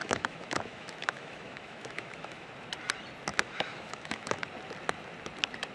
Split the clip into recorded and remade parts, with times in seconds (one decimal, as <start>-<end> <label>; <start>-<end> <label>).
0.0-2.5 remade; 2.5-3.3 recorded; 3.3-4.4 remade; 4.4-5.7 recorded